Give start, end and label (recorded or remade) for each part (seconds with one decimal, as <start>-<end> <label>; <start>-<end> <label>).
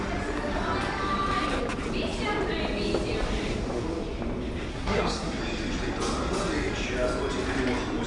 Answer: 0.0-4.7 recorded; 4.7-5.4 remade; 5.4-8.1 recorded